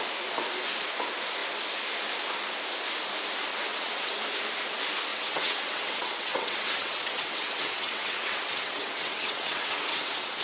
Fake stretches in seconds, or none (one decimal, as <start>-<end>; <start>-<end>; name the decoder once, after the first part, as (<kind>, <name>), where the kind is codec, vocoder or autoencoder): 3.5-4.2 (vocoder, WaveNeXt); 5.1-10.4

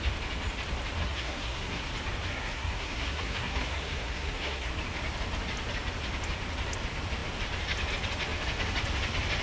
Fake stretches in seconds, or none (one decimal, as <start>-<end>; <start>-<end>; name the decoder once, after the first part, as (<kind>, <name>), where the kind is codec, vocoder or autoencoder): 1.0-1.9 (codec, SNAC); 2.3-4.7

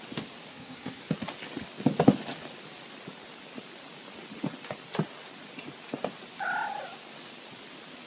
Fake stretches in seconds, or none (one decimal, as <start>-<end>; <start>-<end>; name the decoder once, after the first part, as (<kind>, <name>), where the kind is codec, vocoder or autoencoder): 0.5-1.0 (codec, SNAC)

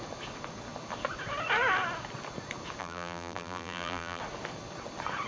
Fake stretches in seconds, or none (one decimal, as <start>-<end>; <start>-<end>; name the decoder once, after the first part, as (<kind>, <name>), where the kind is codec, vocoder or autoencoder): 2.8-4.2 (vocoder, BigVGAN v2)

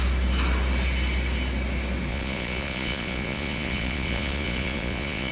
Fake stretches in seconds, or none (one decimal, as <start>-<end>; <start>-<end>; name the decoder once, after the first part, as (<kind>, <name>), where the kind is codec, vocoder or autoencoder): 2.1-5.3 (vocoder, Vocos)

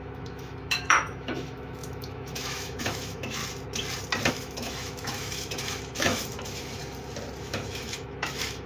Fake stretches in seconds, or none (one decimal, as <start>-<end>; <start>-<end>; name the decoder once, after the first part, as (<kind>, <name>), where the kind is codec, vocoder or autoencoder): 0.0-3.4 (autoencoder, DAC-VAE); 4.3-6.8; 7.4-8.7

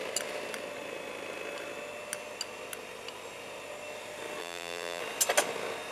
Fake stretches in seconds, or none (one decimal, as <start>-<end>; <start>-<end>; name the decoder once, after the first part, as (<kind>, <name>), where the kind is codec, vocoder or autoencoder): 4.4-5.0 (vocoder, BigVGAN v2)

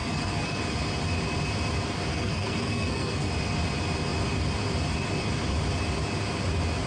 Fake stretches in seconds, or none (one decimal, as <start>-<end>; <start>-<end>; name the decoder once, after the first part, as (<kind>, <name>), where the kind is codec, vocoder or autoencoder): 0.0-0.6 (codec, SNAC); 2.1-3.3